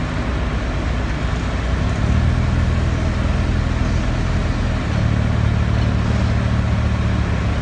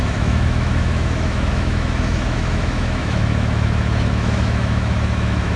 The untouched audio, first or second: first